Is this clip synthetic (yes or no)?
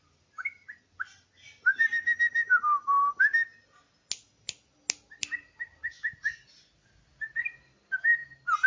no